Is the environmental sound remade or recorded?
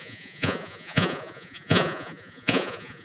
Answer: remade